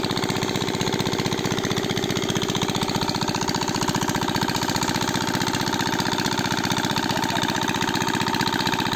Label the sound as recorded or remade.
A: remade